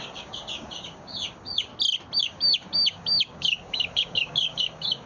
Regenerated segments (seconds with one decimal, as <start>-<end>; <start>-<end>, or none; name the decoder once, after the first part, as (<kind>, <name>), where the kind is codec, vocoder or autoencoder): 0.0-1.7 (codec, DAC); 2.2-5.1